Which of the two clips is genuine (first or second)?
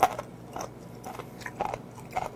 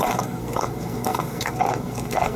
first